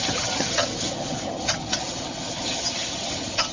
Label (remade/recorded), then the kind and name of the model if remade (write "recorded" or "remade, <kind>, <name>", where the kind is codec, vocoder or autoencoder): remade, vocoder, HiFi-GAN